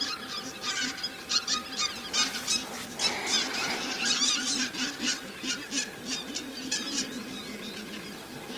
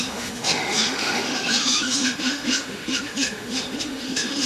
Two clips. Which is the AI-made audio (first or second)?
second